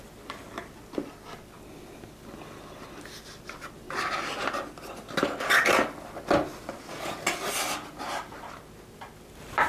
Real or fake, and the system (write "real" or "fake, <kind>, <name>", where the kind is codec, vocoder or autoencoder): real